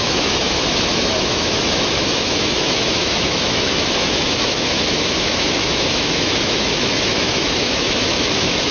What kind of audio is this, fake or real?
fake